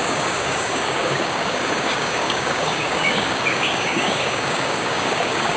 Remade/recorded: remade